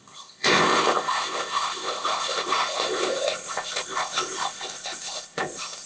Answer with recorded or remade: remade